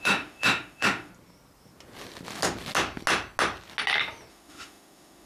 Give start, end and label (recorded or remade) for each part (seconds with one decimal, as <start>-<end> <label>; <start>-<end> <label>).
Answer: 0.0-1.1 remade; 1.1-4.3 recorded; 4.3-5.3 remade

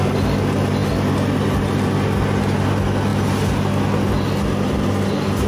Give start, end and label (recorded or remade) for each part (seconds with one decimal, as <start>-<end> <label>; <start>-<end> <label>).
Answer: 0.0-5.5 recorded

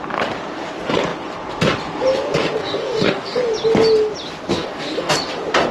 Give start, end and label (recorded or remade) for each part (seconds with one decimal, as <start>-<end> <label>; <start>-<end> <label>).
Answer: 0.0-2.6 recorded; 2.6-3.4 remade; 3.4-4.5 recorded; 4.5-5.1 remade; 5.1-5.7 recorded

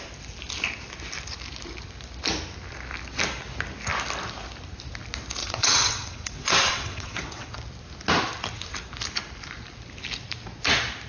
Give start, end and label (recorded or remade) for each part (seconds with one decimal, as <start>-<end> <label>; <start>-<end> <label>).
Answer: 0.0-5.4 recorded; 5.4-7.5 remade; 7.5-11.1 recorded

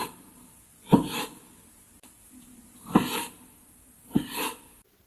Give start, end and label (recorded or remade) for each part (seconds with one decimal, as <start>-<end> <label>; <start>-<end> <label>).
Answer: 0.0-1.4 remade; 1.4-3.0 recorded; 3.0-4.2 remade; 4.2-5.1 recorded

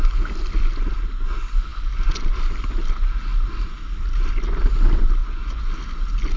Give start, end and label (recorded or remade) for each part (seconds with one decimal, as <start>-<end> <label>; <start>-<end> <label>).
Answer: 0.0-5.2 recorded; 5.2-5.7 remade; 5.7-6.4 recorded

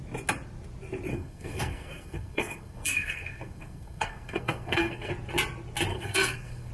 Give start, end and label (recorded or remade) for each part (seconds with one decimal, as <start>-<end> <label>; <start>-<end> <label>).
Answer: 0.0-1.1 recorded; 1.1-5.1 remade; 5.1-5.9 recorded; 5.9-6.7 remade

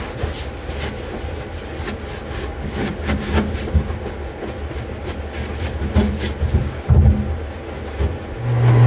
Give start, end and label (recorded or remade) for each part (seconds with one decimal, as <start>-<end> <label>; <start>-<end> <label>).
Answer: 0.0-2.5 recorded; 2.5-3.5 remade; 3.5-6.4 recorded; 6.4-7.0 remade; 7.0-8.9 recorded